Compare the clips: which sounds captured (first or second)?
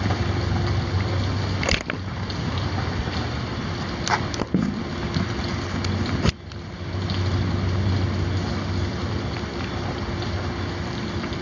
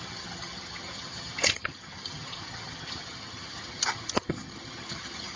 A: first